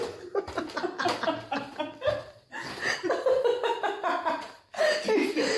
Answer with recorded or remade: recorded